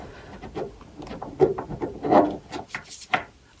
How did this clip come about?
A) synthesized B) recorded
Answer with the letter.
B